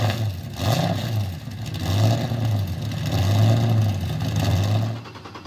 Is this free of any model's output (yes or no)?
yes